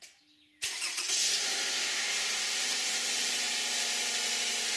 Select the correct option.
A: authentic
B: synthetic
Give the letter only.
A